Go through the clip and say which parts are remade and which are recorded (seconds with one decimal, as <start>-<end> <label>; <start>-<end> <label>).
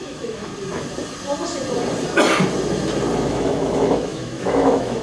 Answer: 0.0-0.5 remade; 0.5-3.3 recorded; 3.3-5.0 remade